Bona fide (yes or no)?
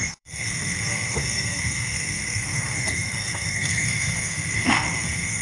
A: no